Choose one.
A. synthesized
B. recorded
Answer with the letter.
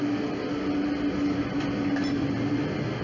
B